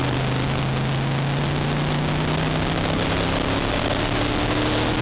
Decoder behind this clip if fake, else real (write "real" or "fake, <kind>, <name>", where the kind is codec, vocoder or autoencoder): real